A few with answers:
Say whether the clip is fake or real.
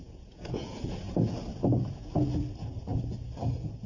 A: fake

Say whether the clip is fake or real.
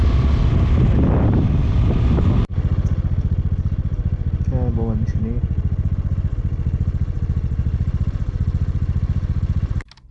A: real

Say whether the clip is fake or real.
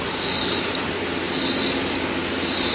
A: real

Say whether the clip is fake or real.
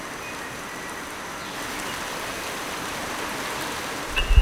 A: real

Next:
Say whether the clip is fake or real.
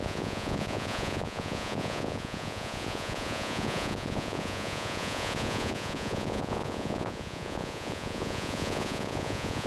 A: fake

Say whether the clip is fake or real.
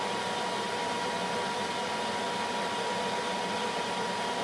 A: real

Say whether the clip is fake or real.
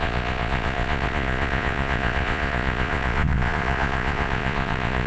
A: fake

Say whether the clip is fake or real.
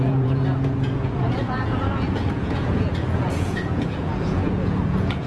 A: fake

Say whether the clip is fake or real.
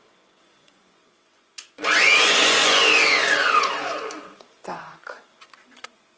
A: fake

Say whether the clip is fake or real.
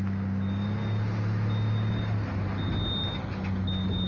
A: real